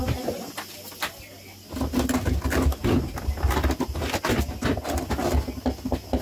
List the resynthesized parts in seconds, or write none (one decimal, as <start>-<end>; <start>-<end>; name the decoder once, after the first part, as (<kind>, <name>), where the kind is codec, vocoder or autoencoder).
none